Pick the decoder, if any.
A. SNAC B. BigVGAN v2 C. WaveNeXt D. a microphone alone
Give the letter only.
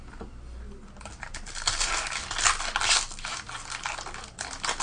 D